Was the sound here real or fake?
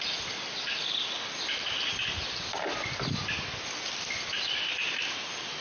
real